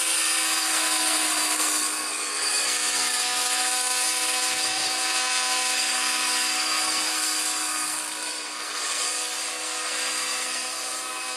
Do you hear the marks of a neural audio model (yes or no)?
yes